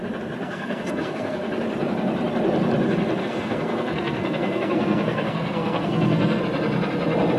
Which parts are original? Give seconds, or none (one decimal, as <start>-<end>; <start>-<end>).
0.0-0.4; 1.5-3.2; 6.4-7.4